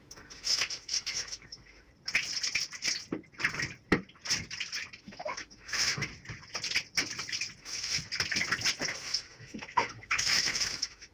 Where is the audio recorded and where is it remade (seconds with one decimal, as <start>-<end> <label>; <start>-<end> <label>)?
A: 0.0-1.9 remade; 1.9-5.0 recorded; 5.0-6.1 remade; 6.1-7.6 recorded; 7.6-8.0 remade; 8.0-8.9 recorded; 8.9-11.1 remade